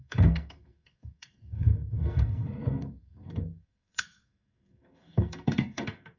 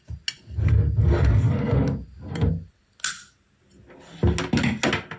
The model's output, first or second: first